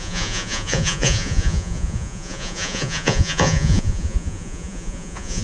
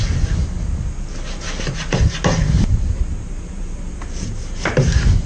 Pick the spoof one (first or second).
first